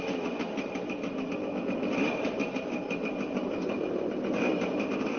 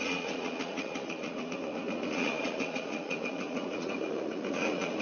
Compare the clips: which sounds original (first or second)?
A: first